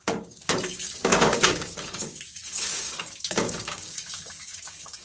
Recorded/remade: remade